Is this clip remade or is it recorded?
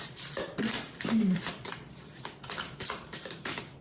remade